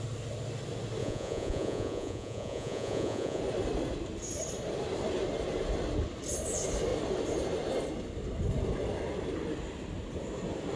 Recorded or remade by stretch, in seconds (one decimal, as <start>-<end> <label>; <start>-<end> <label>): 0.0-1.0 recorded; 1.0-3.4 remade; 3.4-10.8 recorded